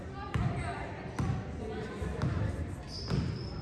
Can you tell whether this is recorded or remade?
recorded